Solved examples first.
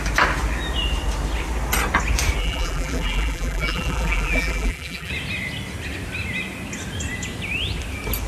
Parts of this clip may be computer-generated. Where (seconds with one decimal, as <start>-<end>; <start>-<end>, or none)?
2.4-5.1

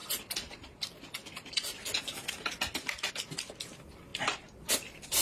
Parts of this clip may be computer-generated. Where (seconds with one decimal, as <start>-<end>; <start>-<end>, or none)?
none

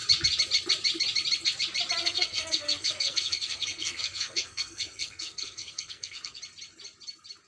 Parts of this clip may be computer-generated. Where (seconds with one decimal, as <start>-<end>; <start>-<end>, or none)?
2.0-6.4